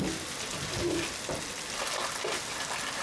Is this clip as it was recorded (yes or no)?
yes